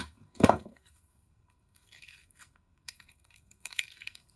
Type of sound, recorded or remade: remade